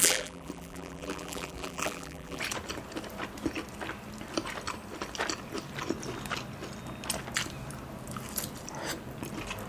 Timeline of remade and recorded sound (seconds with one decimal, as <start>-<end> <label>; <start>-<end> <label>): 0.0-2.4 remade; 2.4-9.7 recorded